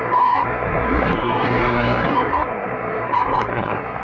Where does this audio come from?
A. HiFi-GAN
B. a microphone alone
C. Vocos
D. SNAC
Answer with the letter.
D